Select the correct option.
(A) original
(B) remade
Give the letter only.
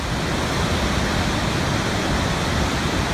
A